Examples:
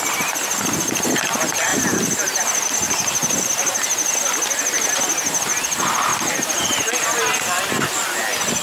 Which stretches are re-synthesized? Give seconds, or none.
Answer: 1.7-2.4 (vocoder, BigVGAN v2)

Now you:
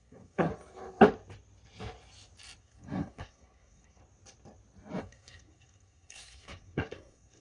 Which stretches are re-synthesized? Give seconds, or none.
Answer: 0.0-0.5 (codec, SNAC); 2.6-4.0; 5.0-7.4

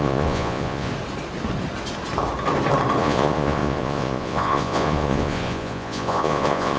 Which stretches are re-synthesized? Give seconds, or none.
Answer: 0.0-0.9 (vocoder, Vocos); 3.0-6.8